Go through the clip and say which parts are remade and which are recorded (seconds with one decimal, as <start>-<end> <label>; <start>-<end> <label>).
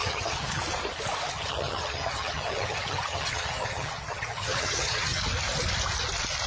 0.0-0.6 remade; 0.6-1.3 recorded; 1.3-5.2 remade; 5.2-6.5 recorded